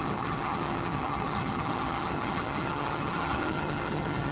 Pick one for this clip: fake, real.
fake